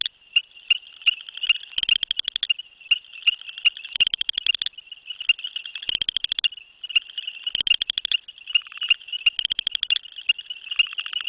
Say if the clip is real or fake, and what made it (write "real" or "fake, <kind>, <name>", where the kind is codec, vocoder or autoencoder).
real